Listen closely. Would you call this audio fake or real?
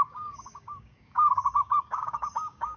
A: fake